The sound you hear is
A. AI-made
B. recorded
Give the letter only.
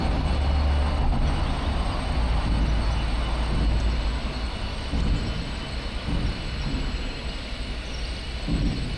B